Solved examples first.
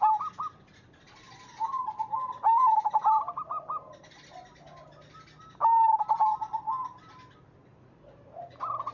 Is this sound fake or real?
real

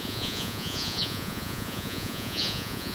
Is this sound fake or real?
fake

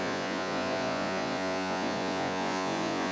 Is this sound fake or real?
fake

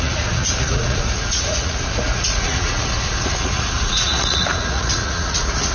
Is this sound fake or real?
fake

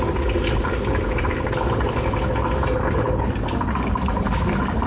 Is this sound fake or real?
real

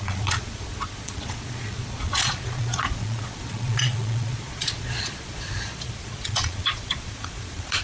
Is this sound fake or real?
fake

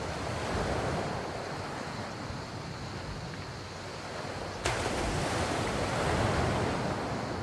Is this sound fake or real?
real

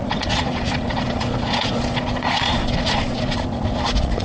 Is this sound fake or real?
fake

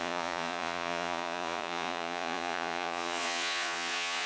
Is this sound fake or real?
fake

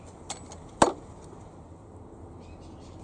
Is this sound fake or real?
real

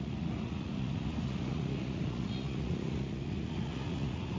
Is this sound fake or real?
fake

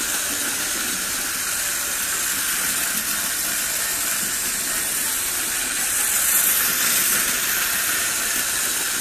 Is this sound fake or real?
real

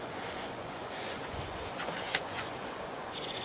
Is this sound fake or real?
fake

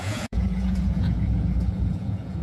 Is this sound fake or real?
fake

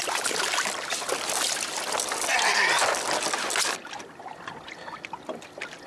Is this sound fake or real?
real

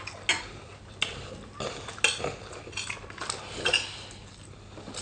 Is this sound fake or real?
real